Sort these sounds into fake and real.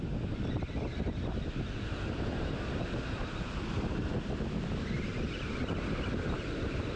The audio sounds real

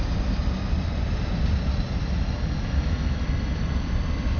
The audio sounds real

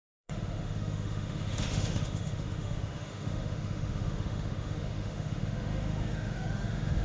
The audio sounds fake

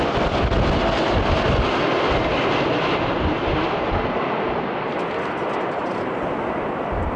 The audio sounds real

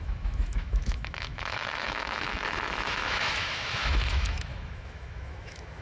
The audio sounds fake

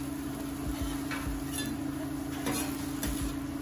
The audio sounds real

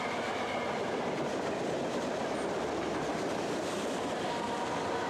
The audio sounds real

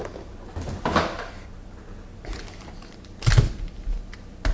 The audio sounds real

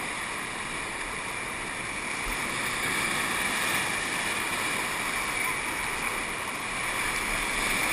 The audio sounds real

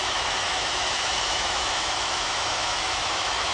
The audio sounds fake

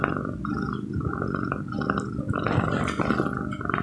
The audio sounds real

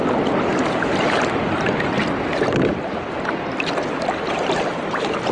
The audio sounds real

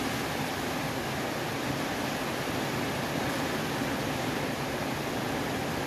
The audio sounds real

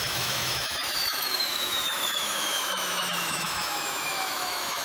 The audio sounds fake